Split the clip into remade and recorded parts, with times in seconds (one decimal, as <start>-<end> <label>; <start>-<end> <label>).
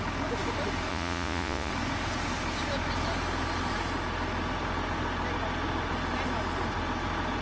0.0-0.9 recorded; 0.9-1.7 remade; 1.7-7.4 recorded